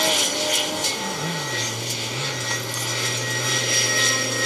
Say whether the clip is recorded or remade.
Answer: recorded